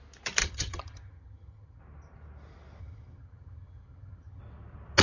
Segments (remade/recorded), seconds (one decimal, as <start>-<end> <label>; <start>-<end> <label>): 0.0-0.4 recorded; 0.4-1.8 remade; 1.8-2.8 recorded; 2.8-4.4 remade; 4.4-5.0 recorded